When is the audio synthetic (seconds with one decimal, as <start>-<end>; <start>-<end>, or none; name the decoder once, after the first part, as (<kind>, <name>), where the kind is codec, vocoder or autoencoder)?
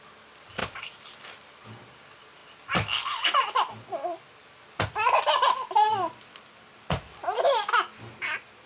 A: 0.0-2.4 (vocoder, BigVGAN v2); 3.7-8.7